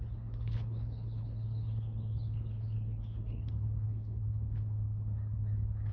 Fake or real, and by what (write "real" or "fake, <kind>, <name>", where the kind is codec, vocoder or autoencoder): fake, codec, HILCodec